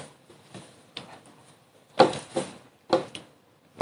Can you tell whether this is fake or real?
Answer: real